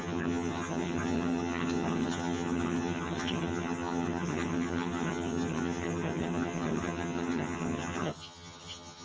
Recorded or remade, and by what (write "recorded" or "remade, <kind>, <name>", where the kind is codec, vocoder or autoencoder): remade, vocoder, HiFi-GAN